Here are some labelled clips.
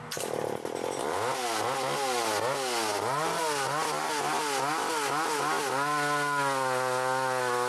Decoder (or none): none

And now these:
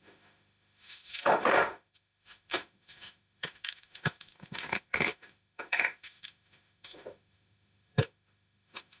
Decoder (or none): autoencoder, DAC-VAE